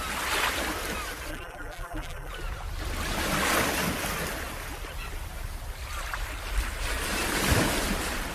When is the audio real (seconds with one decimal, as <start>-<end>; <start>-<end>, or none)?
0.0-1.3; 2.3-8.3